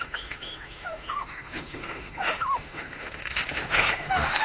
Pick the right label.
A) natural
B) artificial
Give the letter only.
B